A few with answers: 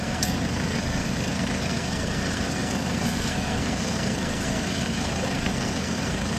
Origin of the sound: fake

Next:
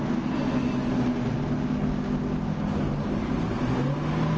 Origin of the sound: real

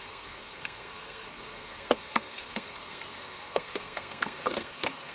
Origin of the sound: fake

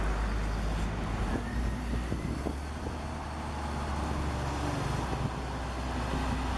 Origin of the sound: real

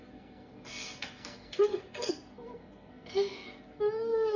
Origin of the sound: fake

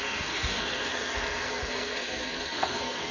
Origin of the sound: fake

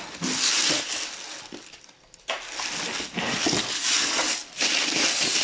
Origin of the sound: real